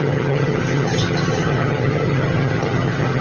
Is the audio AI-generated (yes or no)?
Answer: yes